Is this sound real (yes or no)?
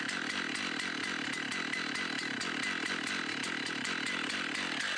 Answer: yes